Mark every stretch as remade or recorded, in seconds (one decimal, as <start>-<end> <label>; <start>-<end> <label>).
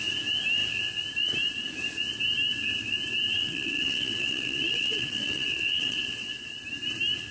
0.0-3.3 recorded; 3.3-6.5 remade; 6.5-7.3 recorded